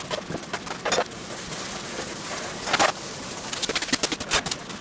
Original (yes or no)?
yes